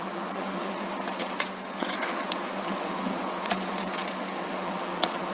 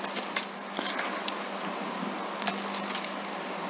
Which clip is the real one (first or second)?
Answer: second